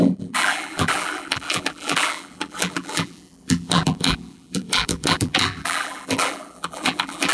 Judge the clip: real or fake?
fake